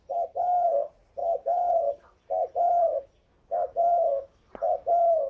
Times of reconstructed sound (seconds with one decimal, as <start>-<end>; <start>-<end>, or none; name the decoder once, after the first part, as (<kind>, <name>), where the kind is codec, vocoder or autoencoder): 1.2-2.2 (autoencoder, DAC-VAE); 3.2-4.5